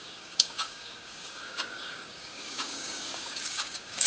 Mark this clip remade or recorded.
remade